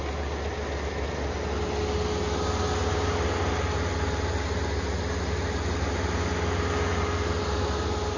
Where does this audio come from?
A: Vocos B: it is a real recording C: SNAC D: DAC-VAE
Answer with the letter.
B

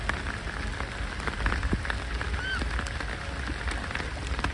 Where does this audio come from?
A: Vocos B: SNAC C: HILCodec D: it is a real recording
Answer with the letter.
D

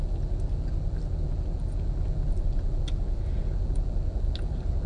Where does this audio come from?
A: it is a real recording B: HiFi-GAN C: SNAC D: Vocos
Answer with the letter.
A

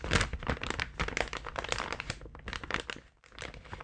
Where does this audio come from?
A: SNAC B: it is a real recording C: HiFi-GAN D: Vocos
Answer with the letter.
B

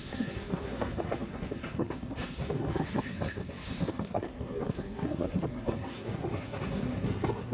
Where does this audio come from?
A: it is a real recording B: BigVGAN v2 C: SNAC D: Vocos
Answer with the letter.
C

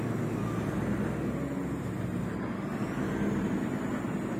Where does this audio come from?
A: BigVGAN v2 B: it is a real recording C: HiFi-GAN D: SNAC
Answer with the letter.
B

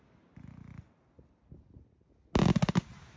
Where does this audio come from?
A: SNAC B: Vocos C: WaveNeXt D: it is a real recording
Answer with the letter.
D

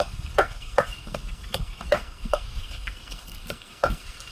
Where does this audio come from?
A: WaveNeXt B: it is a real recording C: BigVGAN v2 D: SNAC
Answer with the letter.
D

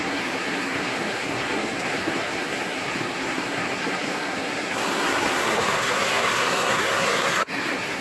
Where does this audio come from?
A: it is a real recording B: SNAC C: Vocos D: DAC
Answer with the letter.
B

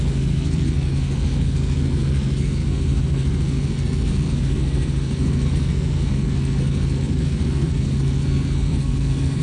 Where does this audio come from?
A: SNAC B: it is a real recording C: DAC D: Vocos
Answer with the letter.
A